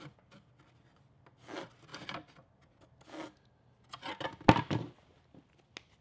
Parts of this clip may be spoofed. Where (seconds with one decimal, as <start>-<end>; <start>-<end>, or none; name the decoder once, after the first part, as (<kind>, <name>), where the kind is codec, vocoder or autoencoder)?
none